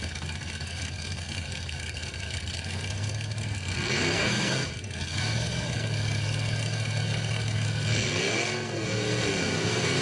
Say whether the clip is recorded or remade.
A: remade